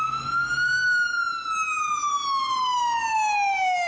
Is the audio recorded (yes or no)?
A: yes